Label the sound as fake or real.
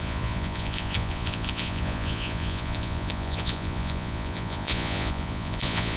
fake